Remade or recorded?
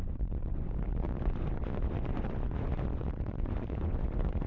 remade